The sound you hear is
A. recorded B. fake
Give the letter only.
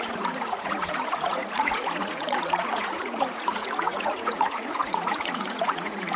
B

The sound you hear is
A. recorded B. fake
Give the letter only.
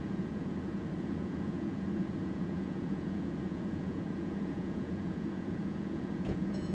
B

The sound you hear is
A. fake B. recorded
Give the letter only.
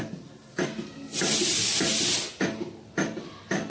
B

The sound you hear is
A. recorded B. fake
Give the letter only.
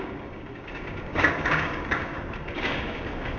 B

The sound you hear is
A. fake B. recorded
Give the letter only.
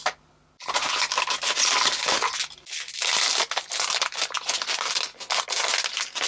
B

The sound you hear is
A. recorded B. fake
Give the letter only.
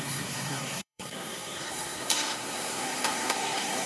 B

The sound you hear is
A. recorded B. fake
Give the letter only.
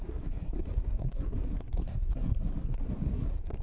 B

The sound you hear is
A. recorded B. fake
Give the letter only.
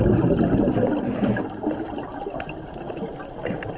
A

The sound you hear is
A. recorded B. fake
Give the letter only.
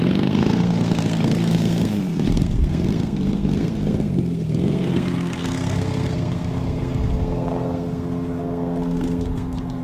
B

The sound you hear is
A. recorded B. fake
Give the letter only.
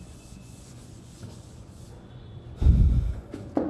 B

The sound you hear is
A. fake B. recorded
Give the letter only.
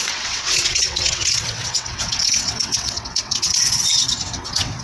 A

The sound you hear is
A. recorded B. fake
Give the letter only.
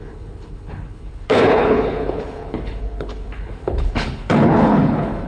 B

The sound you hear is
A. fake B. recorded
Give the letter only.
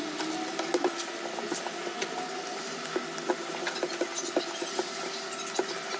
B